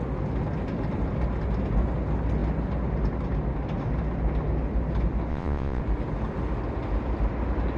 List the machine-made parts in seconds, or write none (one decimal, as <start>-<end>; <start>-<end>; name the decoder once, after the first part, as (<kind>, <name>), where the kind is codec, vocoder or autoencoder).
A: 5.3-5.8 (vocoder, Vocos)